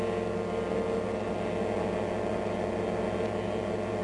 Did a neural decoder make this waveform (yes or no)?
no